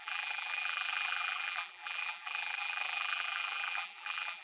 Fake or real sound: fake